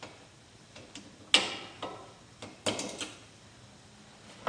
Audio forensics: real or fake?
real